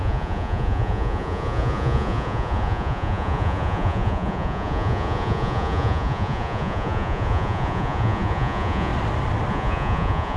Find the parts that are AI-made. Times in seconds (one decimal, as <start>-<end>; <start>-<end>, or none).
0.0-8.9; 9.5-10.4